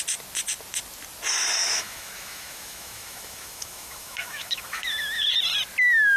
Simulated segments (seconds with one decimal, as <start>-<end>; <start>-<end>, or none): 1.6-5.3